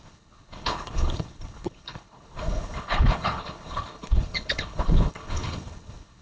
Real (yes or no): no